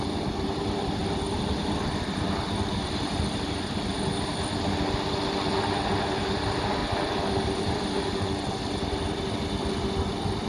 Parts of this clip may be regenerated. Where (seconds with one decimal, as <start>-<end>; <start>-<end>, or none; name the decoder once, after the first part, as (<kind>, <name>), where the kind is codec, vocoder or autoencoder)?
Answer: none